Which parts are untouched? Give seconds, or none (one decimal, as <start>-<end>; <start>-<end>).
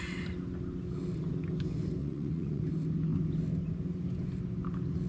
0.0-2.0; 2.6-5.1